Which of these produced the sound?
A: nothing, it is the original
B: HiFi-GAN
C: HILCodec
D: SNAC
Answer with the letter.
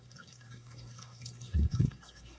D